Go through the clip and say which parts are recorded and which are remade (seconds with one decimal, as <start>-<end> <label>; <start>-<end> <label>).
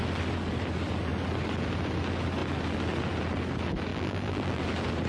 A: 0.0-3.9 recorded; 3.9-4.6 remade; 4.6-5.1 recorded